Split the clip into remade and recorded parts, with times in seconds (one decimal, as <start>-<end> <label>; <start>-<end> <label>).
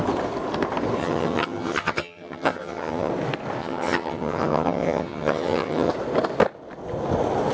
0.0-1.0 recorded; 1.0-3.1 remade; 3.1-3.6 recorded; 3.6-5.9 remade; 5.9-7.5 recorded